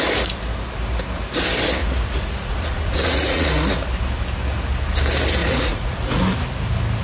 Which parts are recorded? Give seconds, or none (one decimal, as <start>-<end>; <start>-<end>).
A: 0.0-1.8; 3.5-5.4; 6.2-7.0